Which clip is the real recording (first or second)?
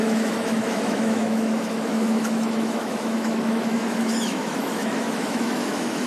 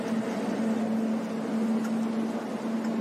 second